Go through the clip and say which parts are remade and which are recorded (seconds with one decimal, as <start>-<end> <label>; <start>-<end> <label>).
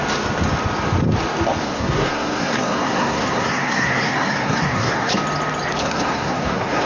0.0-1.6 recorded; 1.6-5.1 remade; 5.1-5.8 recorded; 5.8-6.9 remade